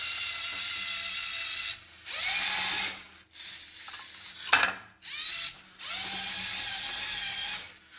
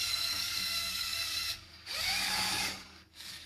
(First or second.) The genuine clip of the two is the first